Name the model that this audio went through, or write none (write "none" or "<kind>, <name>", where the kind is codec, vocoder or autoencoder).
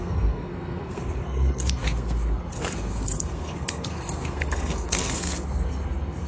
codec, SNAC